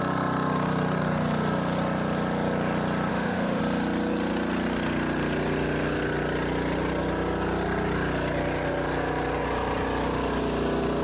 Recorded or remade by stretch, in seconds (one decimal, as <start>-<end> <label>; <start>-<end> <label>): 0.0-3.1 recorded; 3.1-3.6 remade; 3.6-11.0 recorded